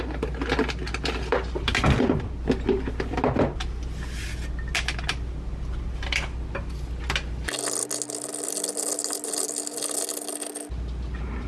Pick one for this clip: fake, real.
real